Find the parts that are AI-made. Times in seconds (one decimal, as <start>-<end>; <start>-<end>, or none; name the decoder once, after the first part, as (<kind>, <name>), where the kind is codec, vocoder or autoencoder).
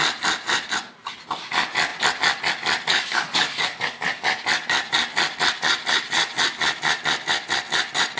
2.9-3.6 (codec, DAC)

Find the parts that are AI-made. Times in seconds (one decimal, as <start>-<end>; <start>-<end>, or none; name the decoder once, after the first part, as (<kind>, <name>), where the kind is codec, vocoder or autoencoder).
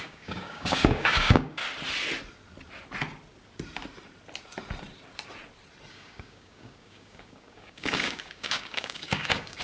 0.0-1.6 (codec, DAC); 5.9-9.6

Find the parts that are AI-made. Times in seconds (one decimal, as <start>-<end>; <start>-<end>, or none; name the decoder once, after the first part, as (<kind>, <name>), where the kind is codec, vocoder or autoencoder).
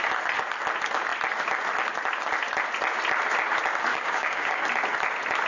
3.9-4.6 (codec, DAC)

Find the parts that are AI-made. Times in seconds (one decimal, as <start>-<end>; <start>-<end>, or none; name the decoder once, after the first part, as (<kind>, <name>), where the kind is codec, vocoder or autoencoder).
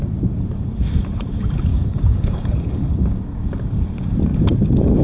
1.7-3.2 (codec, DAC)